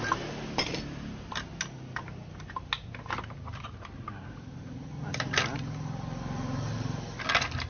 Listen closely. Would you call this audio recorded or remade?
recorded